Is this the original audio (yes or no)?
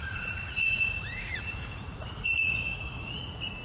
no